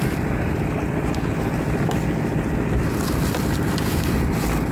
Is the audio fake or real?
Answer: real